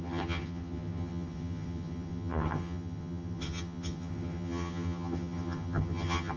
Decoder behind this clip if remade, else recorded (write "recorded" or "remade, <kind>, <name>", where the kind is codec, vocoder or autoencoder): remade, vocoder, HiFi-GAN